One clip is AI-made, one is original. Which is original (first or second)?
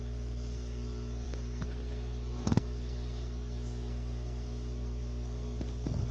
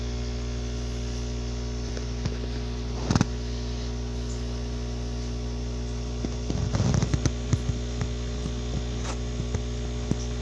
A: second